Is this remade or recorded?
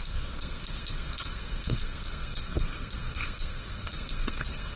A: remade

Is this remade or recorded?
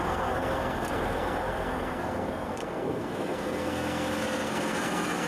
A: remade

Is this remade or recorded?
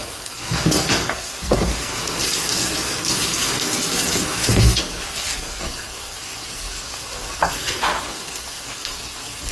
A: remade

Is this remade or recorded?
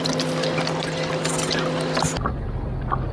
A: recorded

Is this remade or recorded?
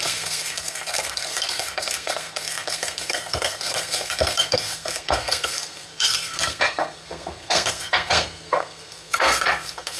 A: remade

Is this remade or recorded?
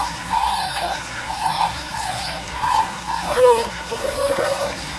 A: remade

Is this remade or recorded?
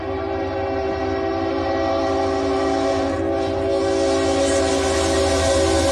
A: recorded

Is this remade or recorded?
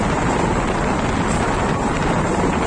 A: recorded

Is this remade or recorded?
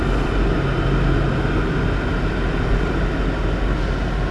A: recorded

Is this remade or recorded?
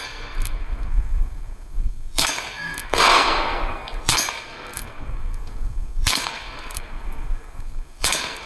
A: remade